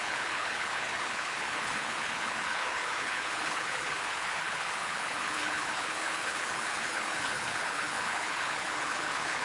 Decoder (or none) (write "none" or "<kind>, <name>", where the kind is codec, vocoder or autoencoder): codec, HILCodec